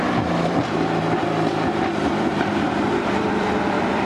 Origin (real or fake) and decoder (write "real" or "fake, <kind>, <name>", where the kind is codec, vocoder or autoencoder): fake, vocoder, BigVGAN v2